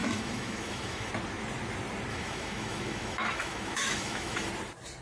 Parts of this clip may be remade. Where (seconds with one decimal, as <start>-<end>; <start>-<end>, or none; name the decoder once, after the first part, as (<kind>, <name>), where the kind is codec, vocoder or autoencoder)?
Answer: 0.0-1.1 (autoencoder, DAC-VAE); 2.1-4.5

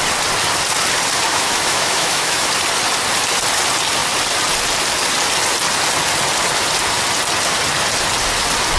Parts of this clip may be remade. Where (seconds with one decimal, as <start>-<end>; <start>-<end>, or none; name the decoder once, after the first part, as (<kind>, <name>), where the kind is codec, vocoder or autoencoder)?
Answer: 1.3-2.5 (autoencoder, DAC-VAE)

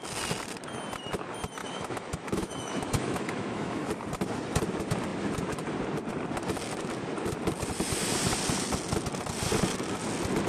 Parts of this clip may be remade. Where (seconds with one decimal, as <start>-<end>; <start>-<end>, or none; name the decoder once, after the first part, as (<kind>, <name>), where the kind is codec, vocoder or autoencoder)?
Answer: 1.6-3.9 (autoencoder, DAC-VAE)

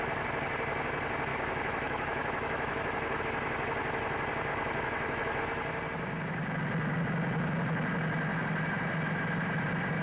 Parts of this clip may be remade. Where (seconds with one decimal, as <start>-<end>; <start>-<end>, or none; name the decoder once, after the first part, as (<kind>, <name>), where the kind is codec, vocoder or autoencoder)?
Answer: 1.3-3.2 (autoencoder, DAC-VAE); 4.5-5.4

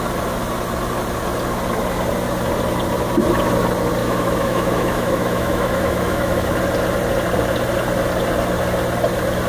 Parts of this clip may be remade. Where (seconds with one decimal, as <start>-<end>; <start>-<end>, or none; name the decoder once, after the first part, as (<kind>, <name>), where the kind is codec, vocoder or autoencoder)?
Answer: 4.0-6.6 (autoencoder, DAC-VAE)

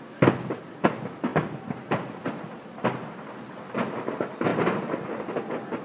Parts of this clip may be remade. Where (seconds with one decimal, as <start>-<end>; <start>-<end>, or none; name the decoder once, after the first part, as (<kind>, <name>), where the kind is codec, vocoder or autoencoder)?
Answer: none

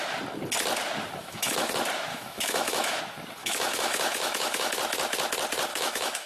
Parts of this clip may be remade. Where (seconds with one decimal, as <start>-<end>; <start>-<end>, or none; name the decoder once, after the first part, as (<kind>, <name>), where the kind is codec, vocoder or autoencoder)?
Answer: 1.2-1.7 (autoencoder, DAC-VAE); 2.1-3.0; 3.4-4.7; 5.7-6.3